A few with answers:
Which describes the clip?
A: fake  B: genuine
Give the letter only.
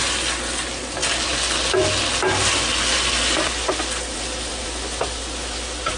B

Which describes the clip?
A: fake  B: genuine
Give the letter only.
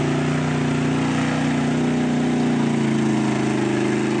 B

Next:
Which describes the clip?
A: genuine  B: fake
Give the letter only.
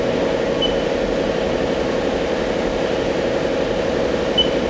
A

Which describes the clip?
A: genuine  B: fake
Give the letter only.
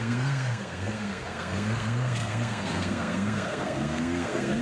B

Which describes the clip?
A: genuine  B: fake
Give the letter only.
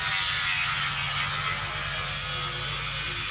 A